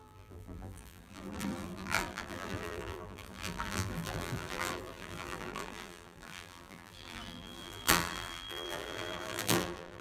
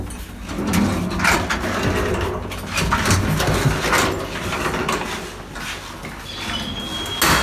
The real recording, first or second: second